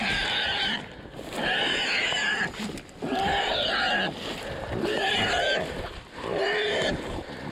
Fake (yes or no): yes